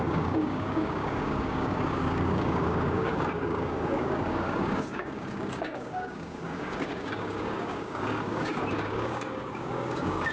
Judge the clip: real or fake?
fake